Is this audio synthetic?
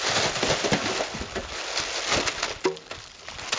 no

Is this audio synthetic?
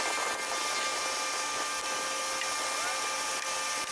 no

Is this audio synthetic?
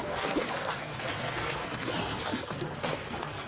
yes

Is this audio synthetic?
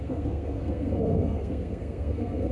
yes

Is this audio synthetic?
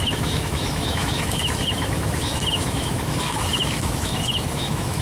yes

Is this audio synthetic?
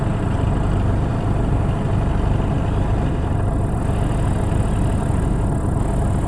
no